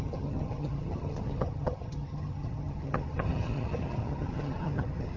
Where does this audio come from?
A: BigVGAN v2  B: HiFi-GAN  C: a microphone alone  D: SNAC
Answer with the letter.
B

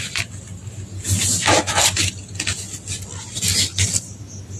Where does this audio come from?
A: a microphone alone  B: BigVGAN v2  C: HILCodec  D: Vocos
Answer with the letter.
A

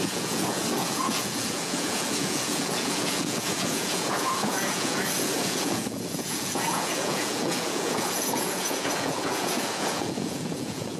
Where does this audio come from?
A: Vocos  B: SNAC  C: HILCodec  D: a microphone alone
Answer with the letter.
A